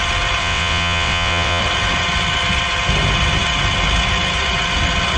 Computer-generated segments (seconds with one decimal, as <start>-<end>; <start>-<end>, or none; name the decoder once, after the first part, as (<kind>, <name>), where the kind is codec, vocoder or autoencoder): 0.4-1.6 (vocoder, WaveNeXt)